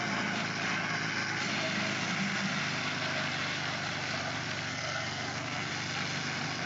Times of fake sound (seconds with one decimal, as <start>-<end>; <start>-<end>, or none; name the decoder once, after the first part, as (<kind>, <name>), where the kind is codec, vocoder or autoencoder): 4.7-5.7 (codec, SNAC)